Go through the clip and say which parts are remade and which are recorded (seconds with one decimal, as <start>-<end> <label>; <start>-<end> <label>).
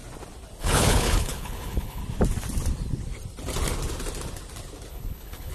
0.0-0.6 recorded; 0.6-2.0 remade; 2.0-4.9 recorded; 4.9-5.5 remade